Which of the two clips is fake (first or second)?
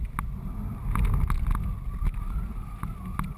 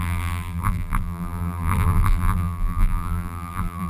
second